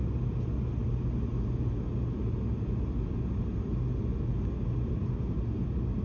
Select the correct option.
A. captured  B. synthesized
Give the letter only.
A